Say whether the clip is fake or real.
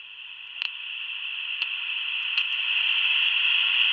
real